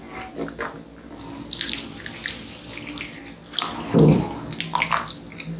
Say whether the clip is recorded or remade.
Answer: recorded